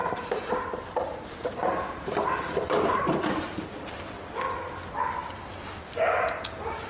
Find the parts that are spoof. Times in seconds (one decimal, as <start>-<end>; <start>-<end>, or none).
0.0-4.1